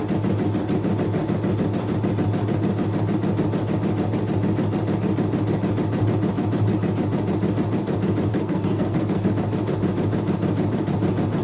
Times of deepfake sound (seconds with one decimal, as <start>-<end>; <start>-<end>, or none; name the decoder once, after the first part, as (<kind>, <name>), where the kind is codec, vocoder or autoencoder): 8.3-9.3 (codec, SNAC)